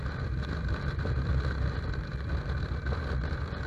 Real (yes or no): yes